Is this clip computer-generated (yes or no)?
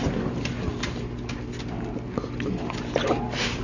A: no